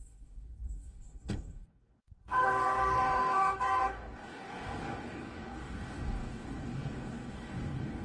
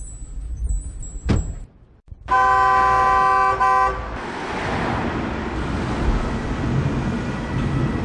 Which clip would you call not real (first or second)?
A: first